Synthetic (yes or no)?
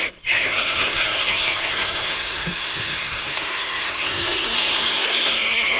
yes